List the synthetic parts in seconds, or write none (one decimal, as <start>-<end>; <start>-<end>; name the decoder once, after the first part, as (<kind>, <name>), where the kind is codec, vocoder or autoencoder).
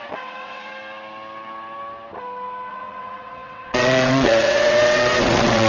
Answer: 0.0-0.7 (vocoder, WaveNeXt); 2.7-5.7